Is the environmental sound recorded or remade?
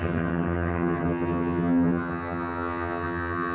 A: remade